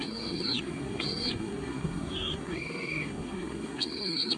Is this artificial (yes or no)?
yes